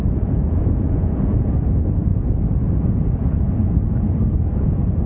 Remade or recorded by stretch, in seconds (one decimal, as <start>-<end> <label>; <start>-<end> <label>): 0.0-2.1 remade; 2.1-2.8 recorded; 2.8-3.6 remade; 3.6-4.4 recorded; 4.4-5.1 remade